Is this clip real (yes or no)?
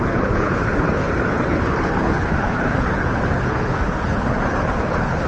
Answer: no